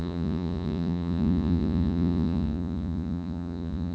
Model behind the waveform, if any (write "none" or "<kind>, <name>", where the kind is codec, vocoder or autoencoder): vocoder, Vocos